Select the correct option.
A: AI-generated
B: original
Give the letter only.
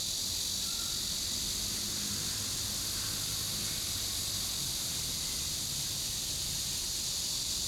B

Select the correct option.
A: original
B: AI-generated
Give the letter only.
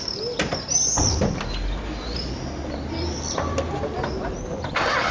A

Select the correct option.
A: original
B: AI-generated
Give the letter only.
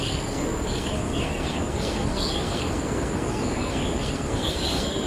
B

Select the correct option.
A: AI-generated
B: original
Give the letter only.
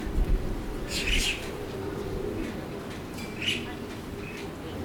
B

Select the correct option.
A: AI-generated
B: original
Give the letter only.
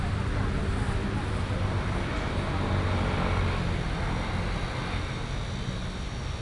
B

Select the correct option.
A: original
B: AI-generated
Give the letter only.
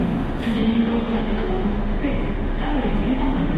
B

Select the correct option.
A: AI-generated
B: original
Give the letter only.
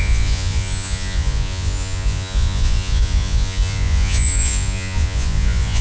A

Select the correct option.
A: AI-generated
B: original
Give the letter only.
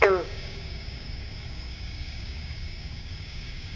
A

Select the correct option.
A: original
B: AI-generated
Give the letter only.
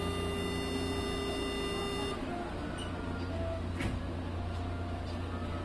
A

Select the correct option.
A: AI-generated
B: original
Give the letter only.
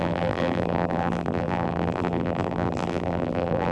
A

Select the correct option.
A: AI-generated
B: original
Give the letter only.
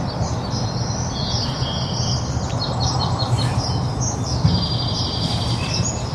B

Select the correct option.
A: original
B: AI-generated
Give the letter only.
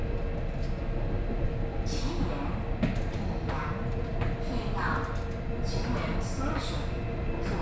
A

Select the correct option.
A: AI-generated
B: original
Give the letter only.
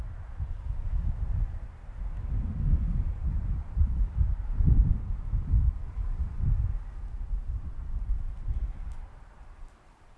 B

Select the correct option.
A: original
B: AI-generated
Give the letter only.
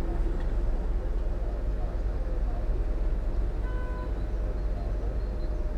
A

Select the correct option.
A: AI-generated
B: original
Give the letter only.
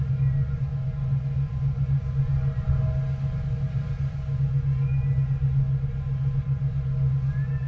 B